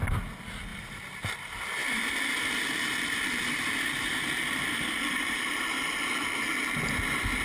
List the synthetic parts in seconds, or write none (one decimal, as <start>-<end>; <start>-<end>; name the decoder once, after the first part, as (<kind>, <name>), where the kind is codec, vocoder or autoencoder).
0.7-1.3 (vocoder, BigVGAN v2)